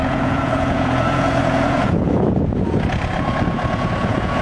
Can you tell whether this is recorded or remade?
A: remade